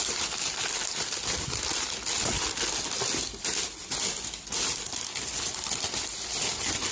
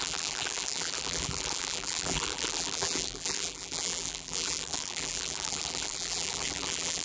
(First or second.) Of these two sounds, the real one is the first